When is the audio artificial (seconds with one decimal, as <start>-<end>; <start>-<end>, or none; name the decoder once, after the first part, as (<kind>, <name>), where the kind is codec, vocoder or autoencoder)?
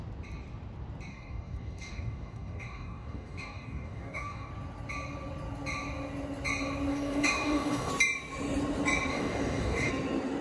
1.1-4.5 (codec, DAC); 6.9-7.9; 9.1-9.9